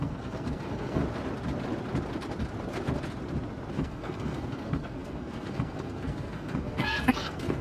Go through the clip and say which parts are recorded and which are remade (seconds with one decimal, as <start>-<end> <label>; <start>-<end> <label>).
0.0-1.0 remade; 1.0-3.7 recorded; 3.7-7.6 remade